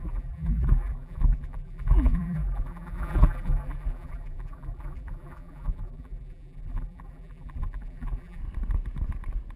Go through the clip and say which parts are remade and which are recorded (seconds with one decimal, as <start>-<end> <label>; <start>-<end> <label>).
0.0-8.4 remade; 8.4-9.6 recorded